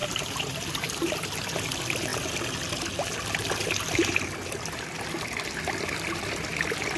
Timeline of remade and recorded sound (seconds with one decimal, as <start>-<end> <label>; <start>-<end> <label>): 0.0-1.2 remade; 1.2-7.0 recorded

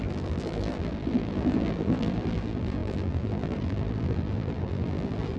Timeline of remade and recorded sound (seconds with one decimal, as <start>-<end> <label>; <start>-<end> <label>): 0.0-5.4 remade

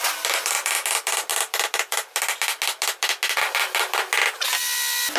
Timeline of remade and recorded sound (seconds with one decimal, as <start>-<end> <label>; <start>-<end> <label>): 0.0-5.2 recorded

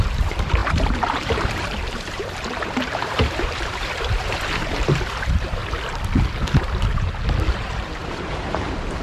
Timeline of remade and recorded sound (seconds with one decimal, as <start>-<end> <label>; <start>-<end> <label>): 0.0-5.6 remade; 5.6-7.5 recorded; 7.5-9.0 remade

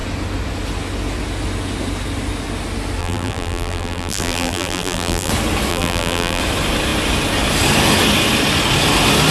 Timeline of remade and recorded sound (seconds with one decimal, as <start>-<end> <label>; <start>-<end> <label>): 0.0-3.0 recorded; 3.0-5.3 remade; 5.3-5.7 recorded; 5.7-6.4 remade; 6.4-9.3 recorded

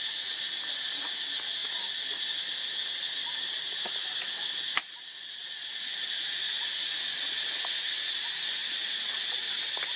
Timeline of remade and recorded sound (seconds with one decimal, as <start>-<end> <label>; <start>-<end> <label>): 0.0-8.6 recorded; 8.6-9.3 remade; 9.3-10.0 recorded

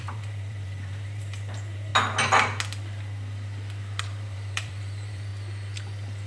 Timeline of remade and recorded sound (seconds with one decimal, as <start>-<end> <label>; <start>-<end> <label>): 0.0-1.9 remade; 1.9-4.0 recorded; 4.0-5.3 remade; 5.3-6.3 recorded